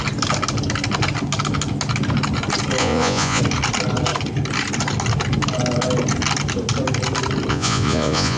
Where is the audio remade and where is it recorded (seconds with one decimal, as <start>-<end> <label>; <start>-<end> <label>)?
0.0-2.8 recorded; 2.8-3.4 remade; 3.4-7.5 recorded; 7.5-8.4 remade